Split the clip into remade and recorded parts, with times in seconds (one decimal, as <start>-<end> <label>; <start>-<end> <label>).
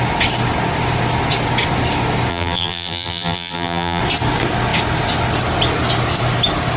0.0-2.3 recorded; 2.3-4.0 remade; 4.0-6.8 recorded